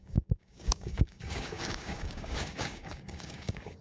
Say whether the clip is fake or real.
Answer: fake